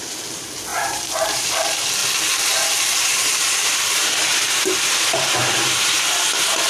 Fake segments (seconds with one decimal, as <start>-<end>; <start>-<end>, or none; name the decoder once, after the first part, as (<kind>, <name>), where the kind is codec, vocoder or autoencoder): 0.7-1.5 (vocoder, BigVGAN v2); 2.0-6.0